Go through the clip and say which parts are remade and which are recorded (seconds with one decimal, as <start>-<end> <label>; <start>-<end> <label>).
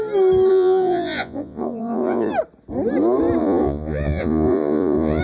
0.0-0.5 recorded; 0.5-2.3 remade; 2.3-3.4 recorded; 3.4-5.2 remade